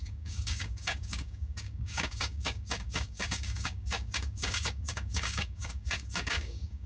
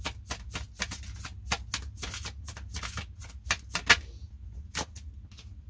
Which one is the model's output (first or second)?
first